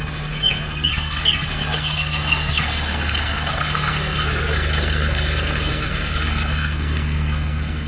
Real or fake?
fake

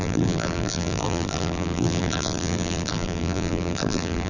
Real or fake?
fake